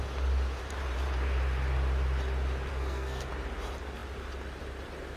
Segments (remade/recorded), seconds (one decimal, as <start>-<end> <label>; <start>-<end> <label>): 0.0-2.7 recorded; 2.7-3.3 remade; 3.3-5.2 recorded